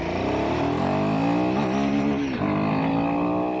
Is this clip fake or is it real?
real